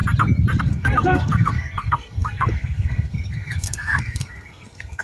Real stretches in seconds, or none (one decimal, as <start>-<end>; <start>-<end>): 0.0-0.6